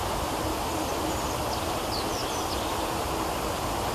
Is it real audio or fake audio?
real